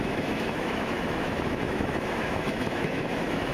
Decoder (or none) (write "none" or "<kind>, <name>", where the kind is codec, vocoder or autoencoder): autoencoder, DAC-VAE